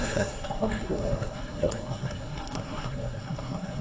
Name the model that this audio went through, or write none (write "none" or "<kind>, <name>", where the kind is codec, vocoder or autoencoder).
codec, SNAC